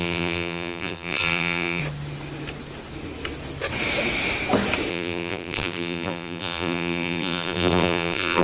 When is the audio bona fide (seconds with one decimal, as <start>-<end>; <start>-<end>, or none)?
1.8-4.9